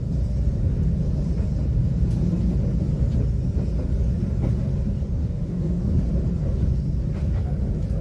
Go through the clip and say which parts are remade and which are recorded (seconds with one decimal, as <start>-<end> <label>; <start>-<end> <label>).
0.0-5.2 recorded; 5.2-5.8 remade; 5.8-8.0 recorded